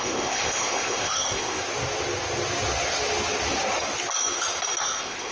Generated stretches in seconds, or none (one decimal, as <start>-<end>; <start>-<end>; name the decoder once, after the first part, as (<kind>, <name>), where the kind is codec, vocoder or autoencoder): 0.0-1.6 (codec, ZipCodec); 4.8-5.3